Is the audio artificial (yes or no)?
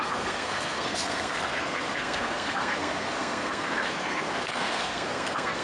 yes